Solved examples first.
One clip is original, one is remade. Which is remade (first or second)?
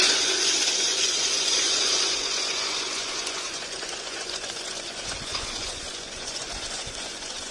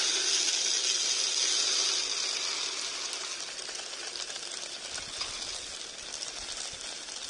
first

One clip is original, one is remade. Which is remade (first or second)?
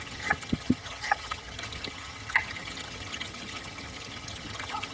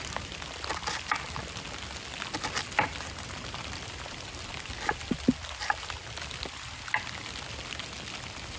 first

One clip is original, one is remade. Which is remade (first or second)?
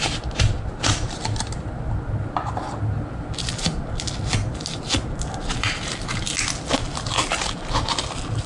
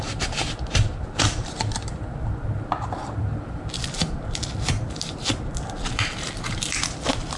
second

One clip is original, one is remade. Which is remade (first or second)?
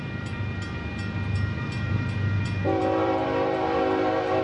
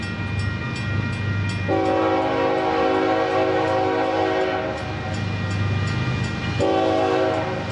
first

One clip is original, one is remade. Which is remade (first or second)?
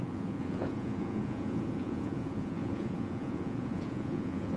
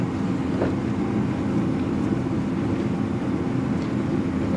first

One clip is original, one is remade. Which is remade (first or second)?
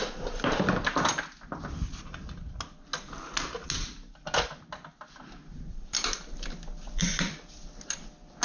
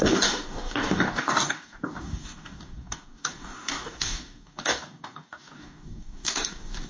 second